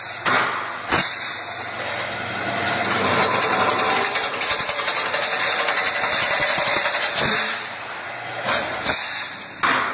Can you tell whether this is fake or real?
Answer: real